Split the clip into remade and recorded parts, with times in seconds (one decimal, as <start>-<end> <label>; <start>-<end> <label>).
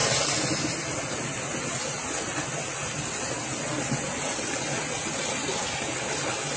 0.0-6.6 recorded